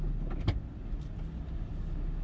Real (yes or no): yes